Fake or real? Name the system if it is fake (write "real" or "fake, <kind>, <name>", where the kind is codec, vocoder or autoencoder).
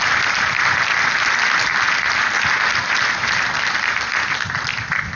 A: real